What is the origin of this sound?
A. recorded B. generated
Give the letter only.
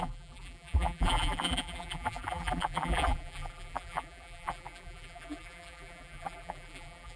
B